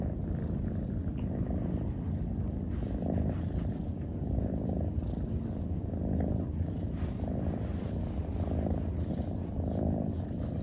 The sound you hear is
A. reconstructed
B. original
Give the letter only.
B